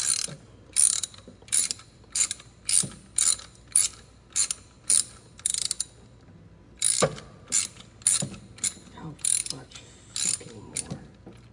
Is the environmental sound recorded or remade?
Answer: recorded